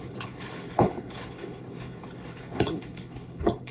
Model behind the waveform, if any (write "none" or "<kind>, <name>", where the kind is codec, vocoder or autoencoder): codec, HILCodec